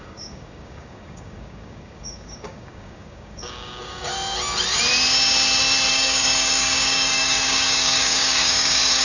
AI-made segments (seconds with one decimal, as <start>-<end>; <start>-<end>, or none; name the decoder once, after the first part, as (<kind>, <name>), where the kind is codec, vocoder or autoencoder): 0.0-4.1 (codec, DAC); 5.9-9.0